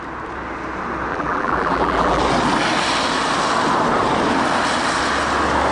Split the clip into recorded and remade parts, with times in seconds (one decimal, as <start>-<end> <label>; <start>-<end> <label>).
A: 0.0-1.1 recorded; 1.1-2.2 remade; 2.2-5.7 recorded